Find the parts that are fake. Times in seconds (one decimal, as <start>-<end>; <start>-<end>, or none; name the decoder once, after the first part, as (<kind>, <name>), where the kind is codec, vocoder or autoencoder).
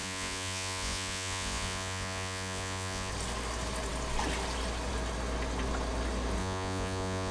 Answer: 0.0-3.1 (vocoder, Vocos); 6.4-7.3